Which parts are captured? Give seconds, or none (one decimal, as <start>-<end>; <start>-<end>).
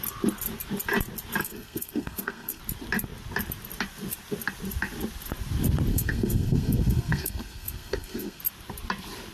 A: 0.0-1.4; 2.6-5.9; 8.4-9.3